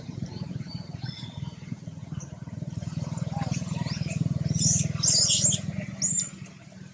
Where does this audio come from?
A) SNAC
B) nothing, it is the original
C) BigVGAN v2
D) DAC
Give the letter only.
B